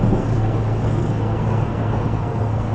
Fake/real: fake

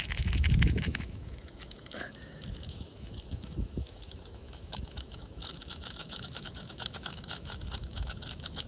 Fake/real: fake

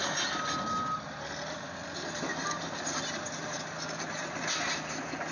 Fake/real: real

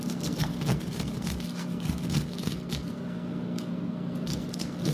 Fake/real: fake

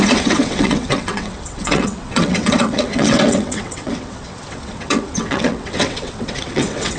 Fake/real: fake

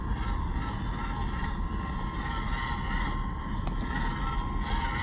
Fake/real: real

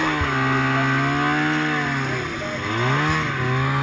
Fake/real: real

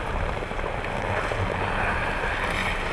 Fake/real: real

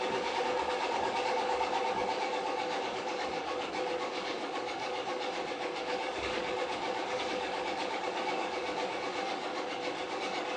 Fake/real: fake